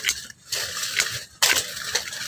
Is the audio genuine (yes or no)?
yes